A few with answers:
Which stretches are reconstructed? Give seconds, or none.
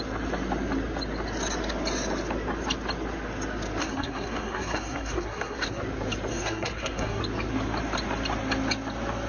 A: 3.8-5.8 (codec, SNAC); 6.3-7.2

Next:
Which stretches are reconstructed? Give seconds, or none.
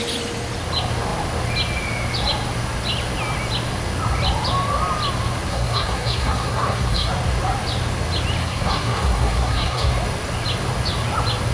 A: 5.5-7.1 (codec, SNAC); 8.4-9.9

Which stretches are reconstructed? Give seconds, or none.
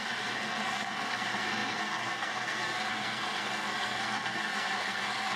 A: 0.0-5.4 (codec, SNAC)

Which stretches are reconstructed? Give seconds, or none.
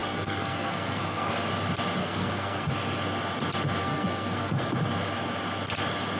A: 0.0-1.3 (codec, SNAC); 2.0-2.7; 3.8-4.7